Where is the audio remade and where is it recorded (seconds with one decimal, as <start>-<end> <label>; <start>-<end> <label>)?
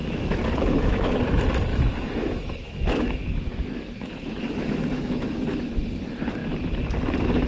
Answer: 0.0-1.2 remade; 1.2-1.7 recorded; 1.7-5.7 remade; 5.7-7.5 recorded